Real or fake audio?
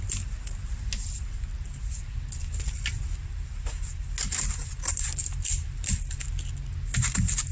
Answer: real